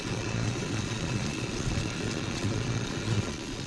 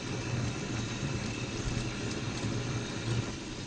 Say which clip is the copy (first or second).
first